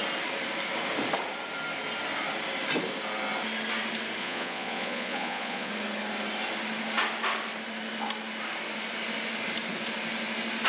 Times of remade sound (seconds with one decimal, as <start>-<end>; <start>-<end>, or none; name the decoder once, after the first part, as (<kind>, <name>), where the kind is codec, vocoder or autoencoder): 4.2-5.7 (vocoder, Vocos)

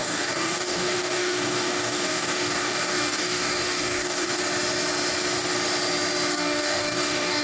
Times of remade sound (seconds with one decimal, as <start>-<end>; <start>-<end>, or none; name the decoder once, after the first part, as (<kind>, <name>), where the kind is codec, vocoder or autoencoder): 0.0-4.4 (codec, DAC); 6.3-7.4

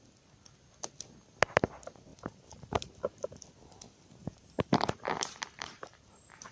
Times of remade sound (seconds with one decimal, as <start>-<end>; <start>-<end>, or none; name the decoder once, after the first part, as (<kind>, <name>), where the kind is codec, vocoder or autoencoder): 2.1-3.4 (vocoder, BigVGAN v2); 4.2-6.5